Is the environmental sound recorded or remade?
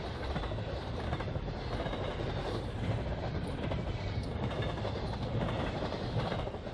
remade